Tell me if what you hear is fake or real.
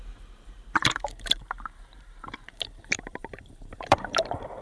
fake